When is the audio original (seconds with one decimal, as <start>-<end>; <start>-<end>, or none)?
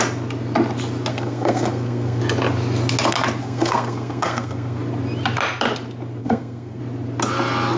0.0-1.1; 2.2-3.4; 4.8-6.2; 6.8-7.8